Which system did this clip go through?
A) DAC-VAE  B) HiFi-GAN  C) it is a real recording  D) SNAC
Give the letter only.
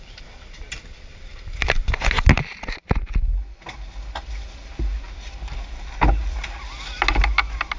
C